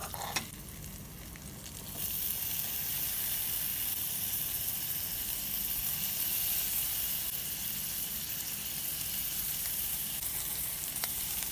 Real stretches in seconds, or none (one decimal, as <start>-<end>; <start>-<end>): 0.0-9.2